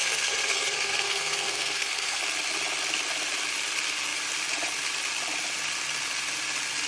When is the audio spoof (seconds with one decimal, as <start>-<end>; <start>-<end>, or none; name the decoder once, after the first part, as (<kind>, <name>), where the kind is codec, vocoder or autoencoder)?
0.0-2.2 (codec, SNAC)